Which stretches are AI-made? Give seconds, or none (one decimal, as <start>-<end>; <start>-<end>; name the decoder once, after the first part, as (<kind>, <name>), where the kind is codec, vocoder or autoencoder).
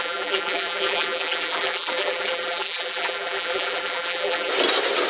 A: 0.0-4.5 (vocoder, BigVGAN v2)